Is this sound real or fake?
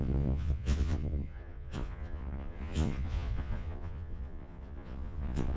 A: fake